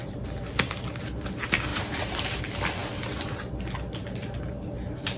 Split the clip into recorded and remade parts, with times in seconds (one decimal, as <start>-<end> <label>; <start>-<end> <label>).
0.0-1.7 recorded; 1.7-2.4 remade; 2.4-5.2 recorded